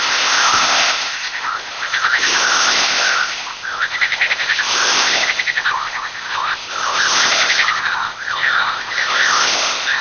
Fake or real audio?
fake